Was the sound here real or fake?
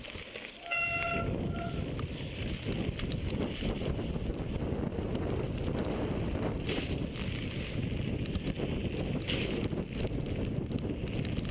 real